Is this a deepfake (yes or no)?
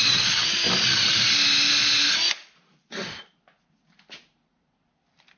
no